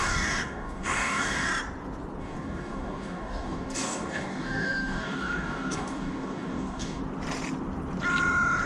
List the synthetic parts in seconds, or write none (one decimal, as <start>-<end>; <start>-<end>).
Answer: 0.0-1.5; 2.2-7.0